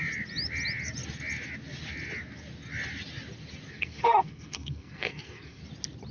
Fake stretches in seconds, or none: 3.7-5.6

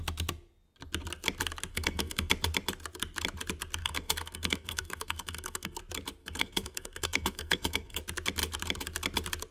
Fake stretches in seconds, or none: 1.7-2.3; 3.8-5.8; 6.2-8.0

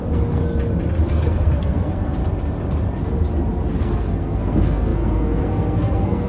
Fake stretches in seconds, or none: 0.0-0.4; 1.1-2.2; 3.8-6.3